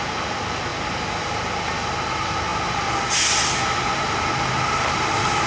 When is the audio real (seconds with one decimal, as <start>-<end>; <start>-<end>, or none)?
0.0-5.5